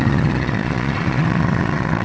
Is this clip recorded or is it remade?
remade